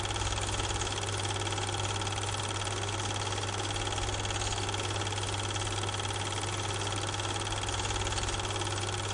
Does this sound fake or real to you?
real